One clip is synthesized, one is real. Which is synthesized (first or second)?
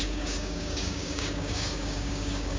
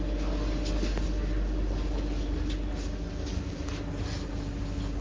first